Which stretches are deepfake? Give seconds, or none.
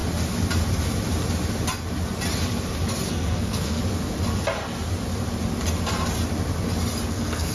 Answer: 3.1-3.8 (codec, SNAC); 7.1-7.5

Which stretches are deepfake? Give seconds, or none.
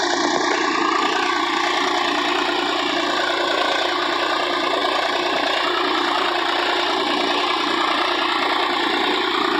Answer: none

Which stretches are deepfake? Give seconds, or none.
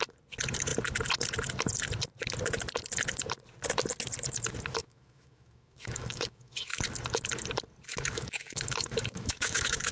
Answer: 4.8-6.8 (autoencoder, DAC-VAE); 7.9-9.9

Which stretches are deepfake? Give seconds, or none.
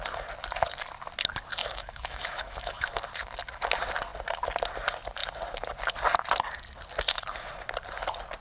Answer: 1.6-2.9 (autoencoder, DAC-VAE)